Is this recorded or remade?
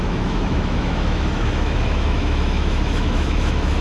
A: remade